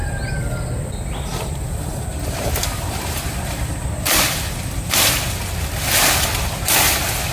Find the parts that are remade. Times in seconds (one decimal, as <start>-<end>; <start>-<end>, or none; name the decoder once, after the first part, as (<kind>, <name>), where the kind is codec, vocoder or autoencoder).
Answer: 1.3-5.7 (vocoder, BigVGAN v2)